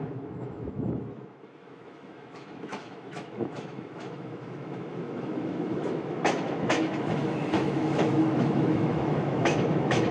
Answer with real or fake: fake